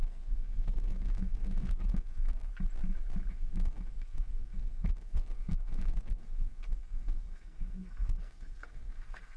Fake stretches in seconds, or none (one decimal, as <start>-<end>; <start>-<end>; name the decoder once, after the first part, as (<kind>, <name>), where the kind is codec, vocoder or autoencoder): 0.0-2.5 (codec, SNAC); 3.3-9.4